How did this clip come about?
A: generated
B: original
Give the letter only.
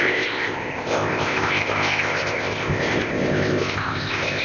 A